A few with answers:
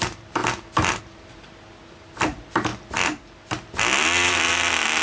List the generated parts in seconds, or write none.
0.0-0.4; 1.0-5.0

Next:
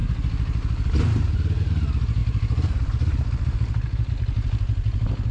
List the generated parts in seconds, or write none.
2.2-4.1

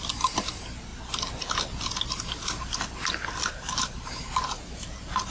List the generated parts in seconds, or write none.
none

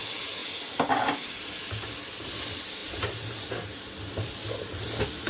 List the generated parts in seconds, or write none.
2.8-3.9